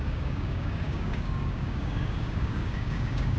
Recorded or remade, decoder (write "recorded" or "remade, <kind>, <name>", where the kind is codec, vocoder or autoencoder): remade, codec, DAC